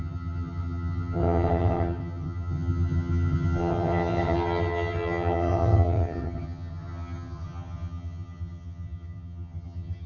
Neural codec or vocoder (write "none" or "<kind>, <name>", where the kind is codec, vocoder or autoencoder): vocoder, HiFi-GAN